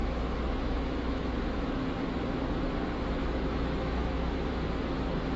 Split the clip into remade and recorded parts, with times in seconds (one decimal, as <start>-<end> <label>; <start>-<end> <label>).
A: 0.0-2.0 remade; 2.0-3.2 recorded; 3.2-4.5 remade; 4.5-5.4 recorded